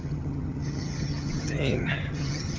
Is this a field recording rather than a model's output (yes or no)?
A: no